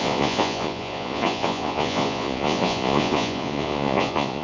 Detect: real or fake fake